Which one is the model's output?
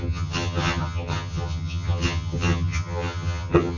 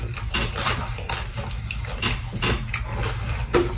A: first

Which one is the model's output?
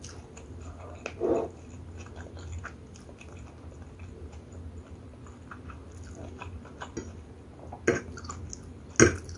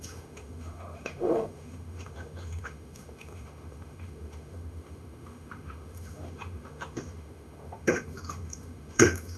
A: second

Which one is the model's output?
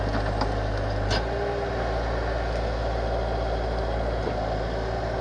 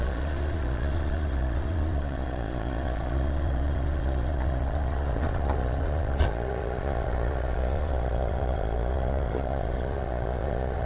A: second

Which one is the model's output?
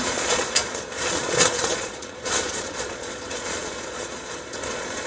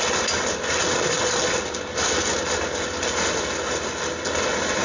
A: first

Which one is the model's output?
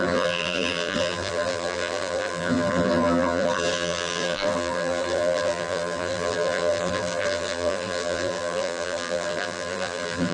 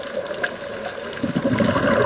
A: first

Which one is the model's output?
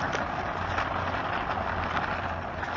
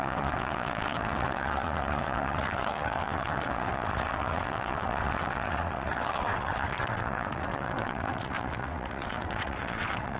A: second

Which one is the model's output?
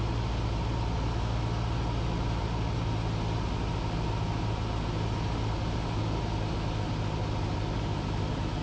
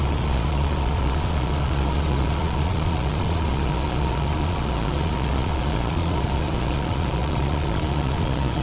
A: second